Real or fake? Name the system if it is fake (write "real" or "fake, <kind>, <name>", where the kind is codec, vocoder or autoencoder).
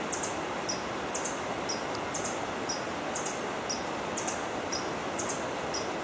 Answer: real